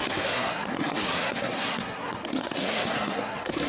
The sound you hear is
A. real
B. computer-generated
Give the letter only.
B